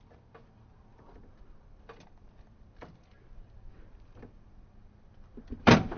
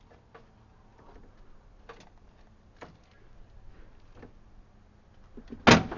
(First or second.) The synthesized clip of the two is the first